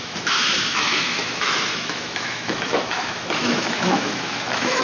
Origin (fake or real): fake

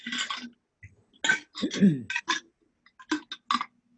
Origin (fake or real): real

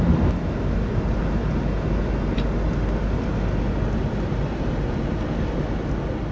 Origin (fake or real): real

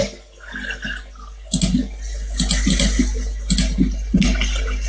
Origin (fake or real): real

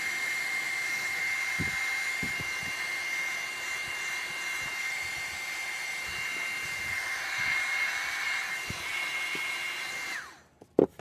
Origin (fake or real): real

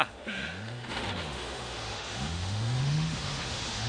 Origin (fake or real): fake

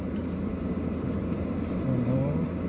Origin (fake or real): real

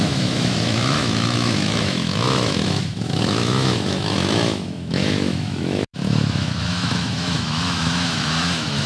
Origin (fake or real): fake